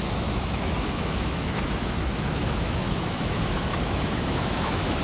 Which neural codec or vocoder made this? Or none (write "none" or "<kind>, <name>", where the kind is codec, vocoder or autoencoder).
autoencoder, DAC-VAE